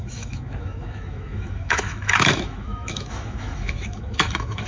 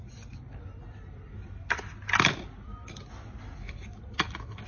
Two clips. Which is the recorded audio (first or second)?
second